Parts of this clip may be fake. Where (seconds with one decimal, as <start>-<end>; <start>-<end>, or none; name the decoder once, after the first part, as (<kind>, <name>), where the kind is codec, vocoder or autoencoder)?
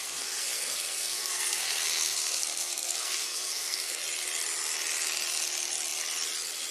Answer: 0.0-4.0 (codec, SNAC)